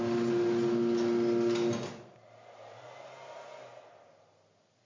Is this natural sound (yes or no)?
yes